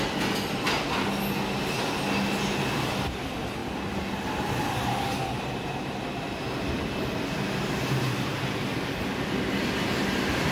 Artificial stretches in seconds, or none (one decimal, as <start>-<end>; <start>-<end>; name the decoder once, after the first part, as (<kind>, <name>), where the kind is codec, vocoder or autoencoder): none